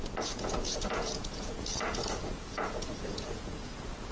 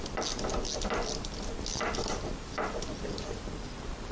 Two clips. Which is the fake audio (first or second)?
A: first